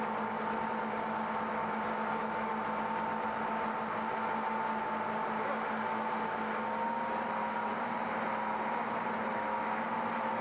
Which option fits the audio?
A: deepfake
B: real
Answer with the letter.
B